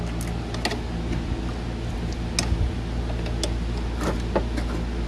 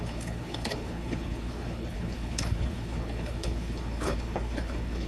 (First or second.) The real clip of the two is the first